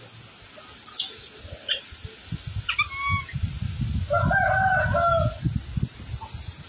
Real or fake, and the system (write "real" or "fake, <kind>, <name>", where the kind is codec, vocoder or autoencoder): real